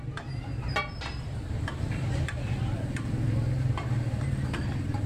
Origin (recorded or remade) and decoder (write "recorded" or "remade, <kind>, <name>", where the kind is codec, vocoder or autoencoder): remade, vocoder, BigVGAN v2